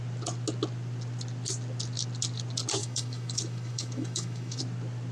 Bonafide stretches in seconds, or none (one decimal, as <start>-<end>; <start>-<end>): 0.0-2.8; 4.6-5.1